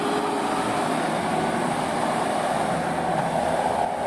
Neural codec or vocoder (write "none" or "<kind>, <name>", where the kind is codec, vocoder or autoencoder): none